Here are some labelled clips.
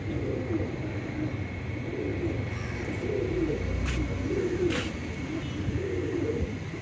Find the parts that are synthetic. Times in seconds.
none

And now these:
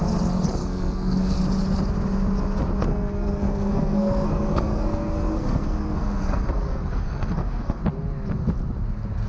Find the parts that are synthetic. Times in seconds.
0.6-1.4 (codec, SNAC); 2.9-7.8

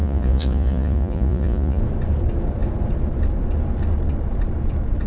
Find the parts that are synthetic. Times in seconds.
0.0-1.8 (vocoder, Vocos)

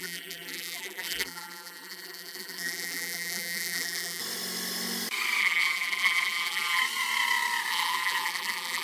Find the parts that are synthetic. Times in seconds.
0.0-4.2 (vocoder, BigVGAN v2); 5.4-6.8; 7.7-8.8

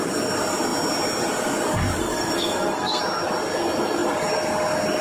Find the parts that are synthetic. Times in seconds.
2.0-3.0 (codec, SNAC)

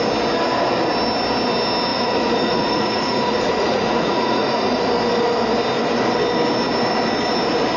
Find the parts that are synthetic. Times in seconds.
1.9-4.8 (vocoder, Vocos)

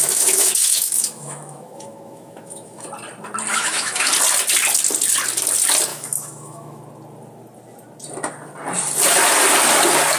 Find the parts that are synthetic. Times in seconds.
0.0-2.9 (autoencoder, DAC-VAE); 3.5-4.1; 5.9-6.8

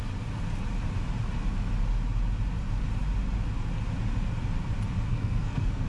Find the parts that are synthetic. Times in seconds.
5.1-5.9 (codec, SNAC)